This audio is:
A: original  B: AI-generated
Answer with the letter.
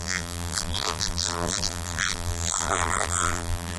B